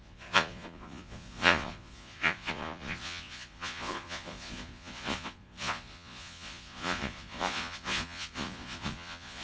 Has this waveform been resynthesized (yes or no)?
yes